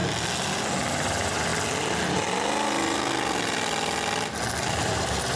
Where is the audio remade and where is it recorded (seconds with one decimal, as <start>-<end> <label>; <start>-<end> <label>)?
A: 0.0-0.9 recorded; 0.9-1.5 remade; 1.5-4.7 recorded; 4.7-5.4 remade